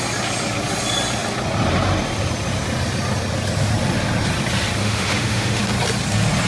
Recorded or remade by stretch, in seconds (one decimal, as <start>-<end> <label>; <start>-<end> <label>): 0.0-4.8 recorded; 4.8-5.6 remade; 5.6-6.5 recorded